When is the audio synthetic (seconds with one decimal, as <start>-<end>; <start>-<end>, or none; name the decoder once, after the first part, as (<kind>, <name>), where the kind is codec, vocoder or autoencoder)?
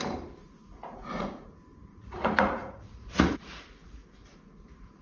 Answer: 0.4-1.5 (vocoder, Vocos); 1.9-5.0